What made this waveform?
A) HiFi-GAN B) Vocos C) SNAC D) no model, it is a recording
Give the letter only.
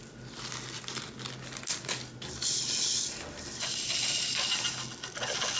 D